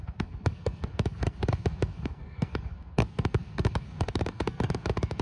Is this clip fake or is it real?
fake